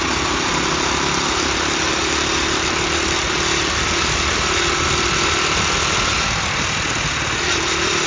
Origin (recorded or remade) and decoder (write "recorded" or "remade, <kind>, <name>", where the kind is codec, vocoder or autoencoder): recorded